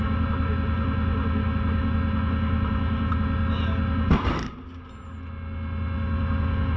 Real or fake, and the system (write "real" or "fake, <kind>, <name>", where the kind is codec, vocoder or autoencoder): real